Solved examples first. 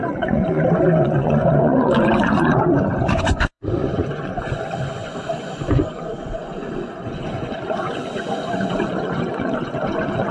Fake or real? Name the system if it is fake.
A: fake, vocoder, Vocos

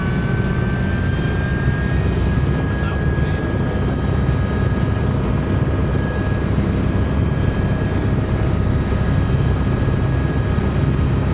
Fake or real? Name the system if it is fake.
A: real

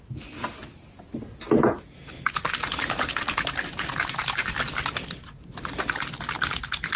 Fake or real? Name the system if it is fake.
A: real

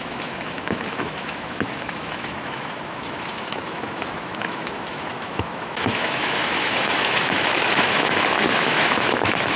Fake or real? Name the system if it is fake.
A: fake, autoencoder, DAC-VAE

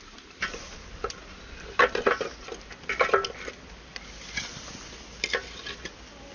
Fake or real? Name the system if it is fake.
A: real